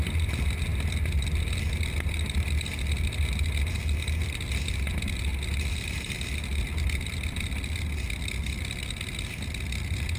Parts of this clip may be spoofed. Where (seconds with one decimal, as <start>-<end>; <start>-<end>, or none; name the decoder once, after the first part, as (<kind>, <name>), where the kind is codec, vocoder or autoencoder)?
none

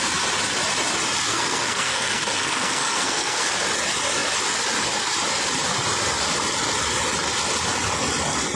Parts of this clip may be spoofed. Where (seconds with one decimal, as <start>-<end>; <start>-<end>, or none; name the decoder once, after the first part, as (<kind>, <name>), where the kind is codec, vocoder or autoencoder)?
1.3-3.5 (codec, SNAC)

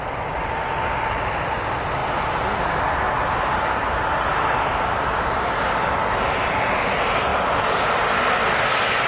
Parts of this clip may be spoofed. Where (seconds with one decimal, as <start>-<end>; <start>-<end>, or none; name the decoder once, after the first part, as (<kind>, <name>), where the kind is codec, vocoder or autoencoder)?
none